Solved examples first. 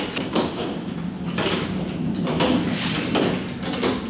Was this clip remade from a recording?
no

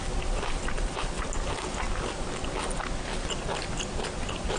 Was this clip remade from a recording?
no